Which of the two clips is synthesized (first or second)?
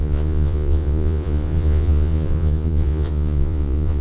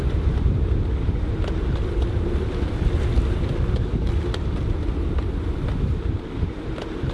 first